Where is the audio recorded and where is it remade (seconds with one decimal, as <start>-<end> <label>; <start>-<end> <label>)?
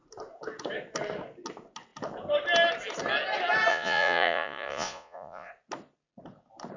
0.0-3.7 recorded; 3.7-5.5 remade; 5.5-6.8 recorded